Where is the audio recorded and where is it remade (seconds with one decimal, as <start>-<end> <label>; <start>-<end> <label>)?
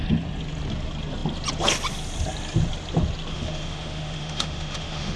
0.0-3.3 recorded; 3.3-5.2 remade